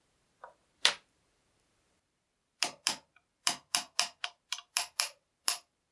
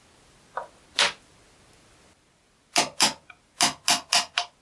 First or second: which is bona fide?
second